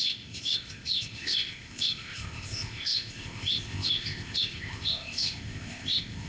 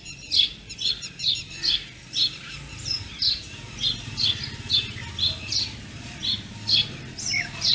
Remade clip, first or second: first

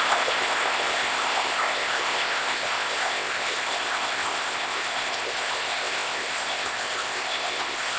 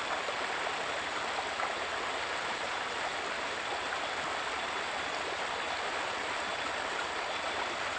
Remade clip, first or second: first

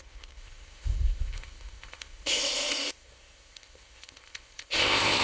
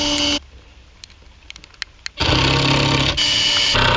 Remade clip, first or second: first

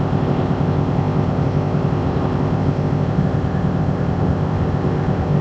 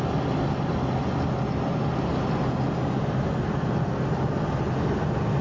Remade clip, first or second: first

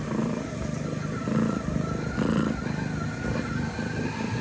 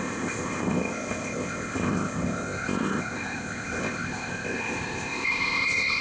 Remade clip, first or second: second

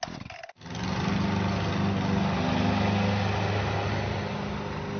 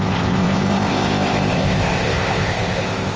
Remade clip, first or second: second